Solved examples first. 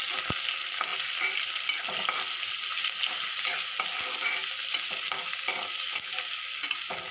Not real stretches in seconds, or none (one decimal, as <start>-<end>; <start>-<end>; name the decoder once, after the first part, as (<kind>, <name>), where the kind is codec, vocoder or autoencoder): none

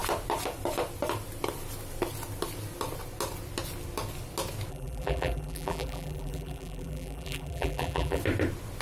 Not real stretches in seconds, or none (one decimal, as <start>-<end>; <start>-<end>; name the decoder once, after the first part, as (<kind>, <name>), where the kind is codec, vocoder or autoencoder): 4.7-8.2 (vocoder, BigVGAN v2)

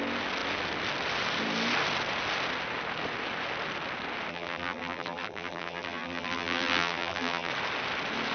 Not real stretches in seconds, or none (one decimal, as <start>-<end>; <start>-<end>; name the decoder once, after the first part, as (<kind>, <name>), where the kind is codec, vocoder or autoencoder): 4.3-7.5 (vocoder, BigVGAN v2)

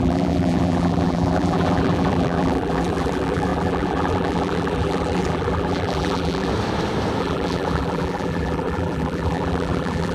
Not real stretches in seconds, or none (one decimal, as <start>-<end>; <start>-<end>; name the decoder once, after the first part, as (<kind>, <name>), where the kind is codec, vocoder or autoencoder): 0.0-6.5 (vocoder, BigVGAN v2); 7.2-10.1